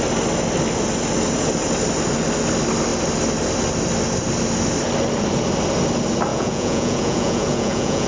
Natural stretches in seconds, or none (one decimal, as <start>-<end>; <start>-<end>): 0.0-6.3